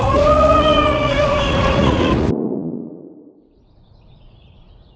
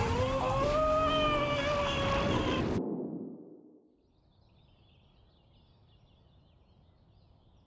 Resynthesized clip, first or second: first